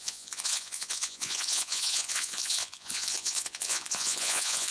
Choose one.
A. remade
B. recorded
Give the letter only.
A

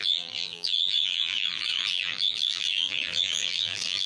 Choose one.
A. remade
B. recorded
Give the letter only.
A